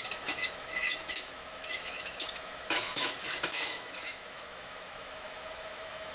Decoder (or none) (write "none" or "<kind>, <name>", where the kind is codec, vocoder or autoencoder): autoencoder, DAC-VAE